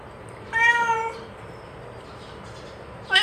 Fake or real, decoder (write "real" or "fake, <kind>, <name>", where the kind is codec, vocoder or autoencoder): fake, vocoder, BigVGAN v2